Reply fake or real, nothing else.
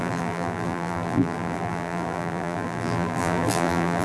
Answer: fake